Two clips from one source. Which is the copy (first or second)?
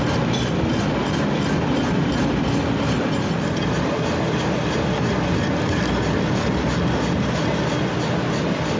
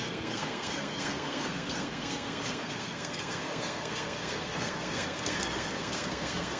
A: second